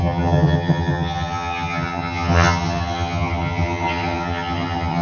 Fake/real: fake